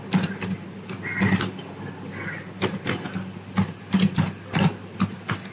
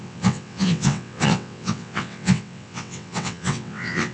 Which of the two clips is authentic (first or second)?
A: first